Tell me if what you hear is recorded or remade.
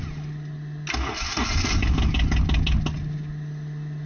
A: recorded